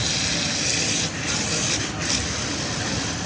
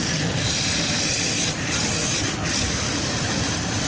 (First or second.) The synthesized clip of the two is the second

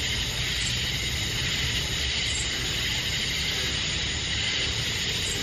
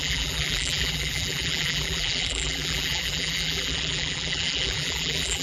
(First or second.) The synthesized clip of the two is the second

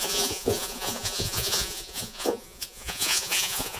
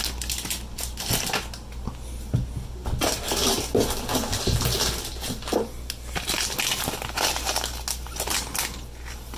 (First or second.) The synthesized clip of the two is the first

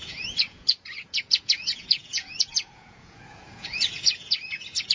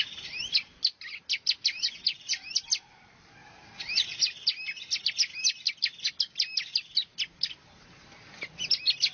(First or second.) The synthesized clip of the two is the first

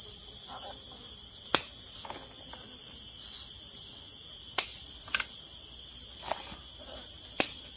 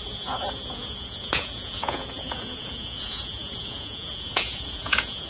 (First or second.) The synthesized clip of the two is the second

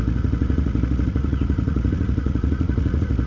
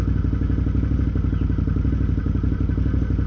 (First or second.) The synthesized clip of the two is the first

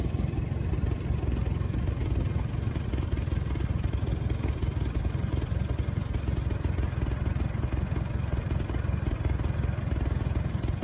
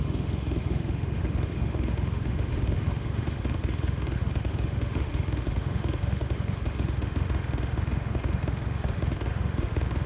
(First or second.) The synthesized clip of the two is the second